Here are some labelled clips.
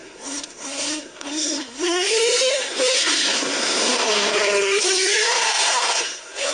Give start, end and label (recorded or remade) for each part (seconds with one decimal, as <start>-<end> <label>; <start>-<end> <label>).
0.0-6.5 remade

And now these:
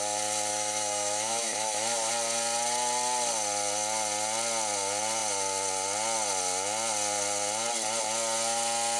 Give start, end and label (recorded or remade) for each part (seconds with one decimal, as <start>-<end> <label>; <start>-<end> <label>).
0.0-0.5 recorded; 0.5-2.1 remade; 2.1-9.0 recorded

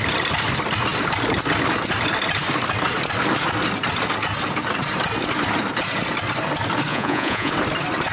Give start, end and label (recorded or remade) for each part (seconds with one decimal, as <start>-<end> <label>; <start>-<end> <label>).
0.0-6.9 recorded; 6.9-7.5 remade; 7.5-8.1 recorded

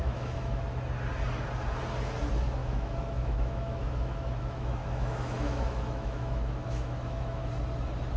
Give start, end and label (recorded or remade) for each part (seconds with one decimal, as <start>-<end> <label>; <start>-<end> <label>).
0.0-0.6 remade; 0.6-2.6 recorded; 2.6-7.5 remade; 7.5-8.2 recorded

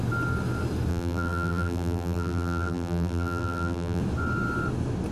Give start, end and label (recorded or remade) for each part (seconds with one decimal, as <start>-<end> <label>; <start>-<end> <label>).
0.0-0.9 recorded; 0.9-4.0 remade; 4.0-5.1 recorded